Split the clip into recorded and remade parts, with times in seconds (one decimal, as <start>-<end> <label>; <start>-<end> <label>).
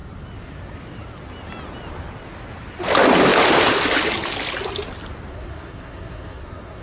0.0-5.3 recorded; 5.3-6.8 remade